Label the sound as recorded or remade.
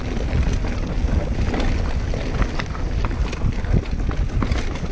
recorded